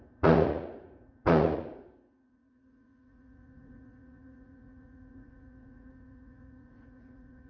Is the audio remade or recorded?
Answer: remade